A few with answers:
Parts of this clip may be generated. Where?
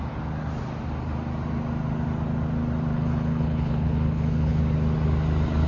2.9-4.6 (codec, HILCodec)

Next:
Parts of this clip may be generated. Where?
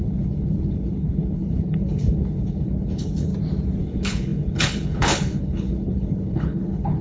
0.0-3.3 (codec, HILCodec); 3.8-7.0